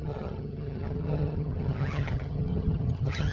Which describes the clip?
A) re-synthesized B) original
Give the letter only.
A